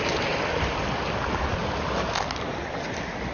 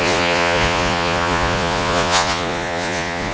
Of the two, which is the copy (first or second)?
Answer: second